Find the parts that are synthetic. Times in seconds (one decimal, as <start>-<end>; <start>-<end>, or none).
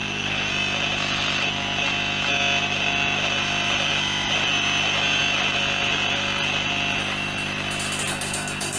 0.0-0.5; 8.1-8.8